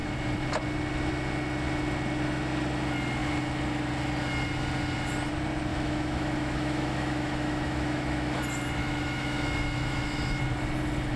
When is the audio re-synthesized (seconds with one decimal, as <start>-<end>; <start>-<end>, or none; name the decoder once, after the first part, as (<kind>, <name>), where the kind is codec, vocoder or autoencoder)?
5.7-8.4 (autoencoder, DAC-VAE); 8.8-10.4